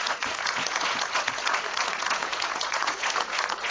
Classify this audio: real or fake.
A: fake